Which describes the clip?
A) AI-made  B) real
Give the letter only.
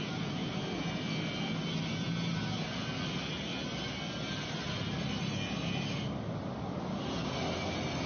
B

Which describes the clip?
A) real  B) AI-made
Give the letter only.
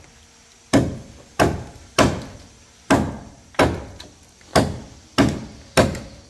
A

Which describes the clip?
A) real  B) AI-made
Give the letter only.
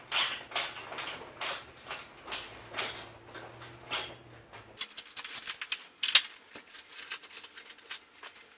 A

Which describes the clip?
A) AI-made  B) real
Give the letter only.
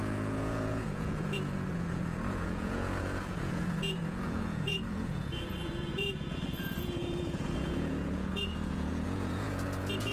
A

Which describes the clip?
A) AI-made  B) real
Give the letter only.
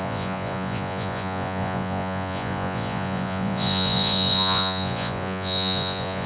A